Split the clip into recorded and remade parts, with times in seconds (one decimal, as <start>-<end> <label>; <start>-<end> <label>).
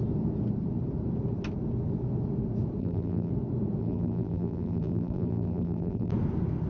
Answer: 0.0-2.8 recorded; 2.8-3.3 remade; 3.3-3.8 recorded; 3.8-6.1 remade; 6.1-6.7 recorded